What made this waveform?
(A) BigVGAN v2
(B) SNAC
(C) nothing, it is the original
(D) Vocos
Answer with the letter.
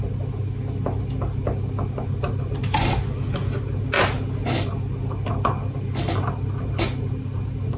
C